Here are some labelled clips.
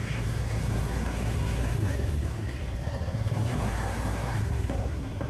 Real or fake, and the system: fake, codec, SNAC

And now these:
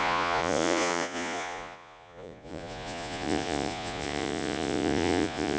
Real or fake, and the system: fake, vocoder, Vocos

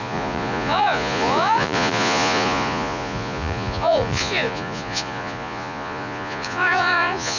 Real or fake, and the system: fake, vocoder, Vocos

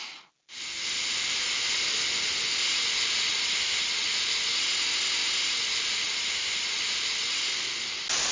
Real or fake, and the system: real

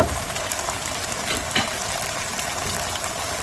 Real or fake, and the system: real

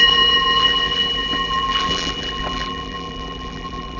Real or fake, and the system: fake, vocoder, BigVGAN v2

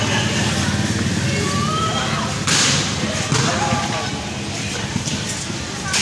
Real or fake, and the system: real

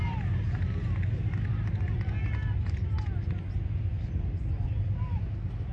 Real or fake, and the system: real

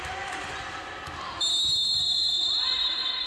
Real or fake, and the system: real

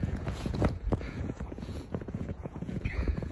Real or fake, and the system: fake, vocoder, Vocos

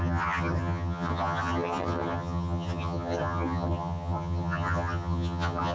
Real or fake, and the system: fake, vocoder, HiFi-GAN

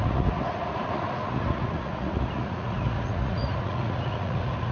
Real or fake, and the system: fake, vocoder, Vocos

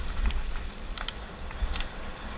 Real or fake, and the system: real